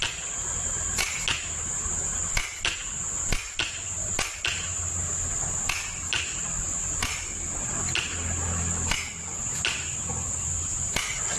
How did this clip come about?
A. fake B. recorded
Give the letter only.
B